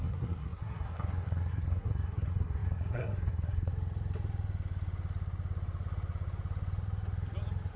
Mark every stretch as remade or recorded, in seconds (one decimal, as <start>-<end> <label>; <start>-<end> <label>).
0.0-3.7 remade; 3.7-7.8 recorded